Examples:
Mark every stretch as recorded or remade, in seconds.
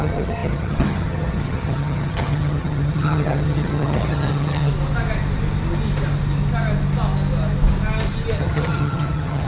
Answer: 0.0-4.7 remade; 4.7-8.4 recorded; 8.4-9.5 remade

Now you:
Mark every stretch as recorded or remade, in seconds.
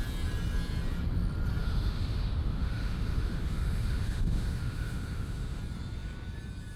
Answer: 0.0-1.6 recorded; 1.6-5.6 remade; 5.6-6.8 recorded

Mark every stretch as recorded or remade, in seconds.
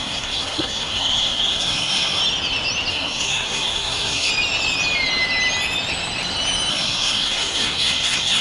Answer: 0.0-2.2 remade; 2.2-2.9 recorded; 2.9-4.3 remade; 4.3-6.7 recorded; 6.7-8.4 remade